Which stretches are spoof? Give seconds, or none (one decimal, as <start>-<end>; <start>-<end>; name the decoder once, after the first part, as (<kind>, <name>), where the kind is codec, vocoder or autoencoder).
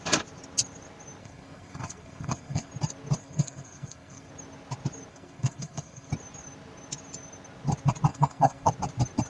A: 1.2-2.7 (codec, SNAC); 3.2-4.3; 5.1-6.1; 8.1-8.7